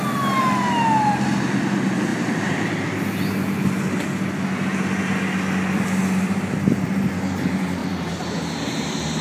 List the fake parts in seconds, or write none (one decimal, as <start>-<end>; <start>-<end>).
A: 2.1-2.7; 7.8-8.4